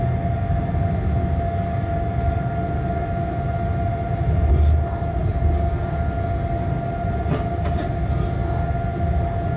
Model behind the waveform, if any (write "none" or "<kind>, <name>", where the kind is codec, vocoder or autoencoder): none